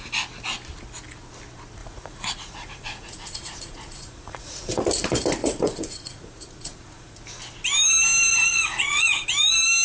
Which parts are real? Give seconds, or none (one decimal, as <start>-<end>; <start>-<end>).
0.0-1.8; 4.8-5.4; 7.2-8.5; 9.2-9.8